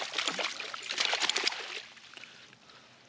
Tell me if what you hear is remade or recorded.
recorded